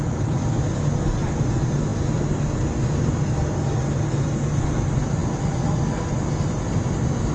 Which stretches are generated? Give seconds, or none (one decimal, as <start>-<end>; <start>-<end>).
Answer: none